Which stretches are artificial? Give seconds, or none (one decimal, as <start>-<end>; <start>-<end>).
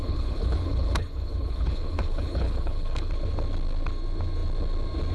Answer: 0.0-3.1